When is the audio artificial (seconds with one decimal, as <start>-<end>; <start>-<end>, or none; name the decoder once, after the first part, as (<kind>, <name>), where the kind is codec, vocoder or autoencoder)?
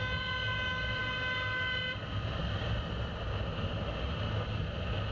none